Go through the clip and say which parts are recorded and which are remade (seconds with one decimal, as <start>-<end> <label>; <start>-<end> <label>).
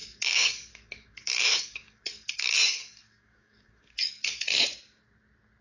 0.0-4.5 remade; 4.5-5.6 recorded